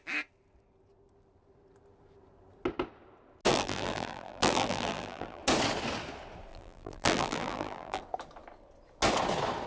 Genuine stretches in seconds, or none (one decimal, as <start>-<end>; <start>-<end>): 0.0-3.5; 5.4-6.5; 8.0-9.7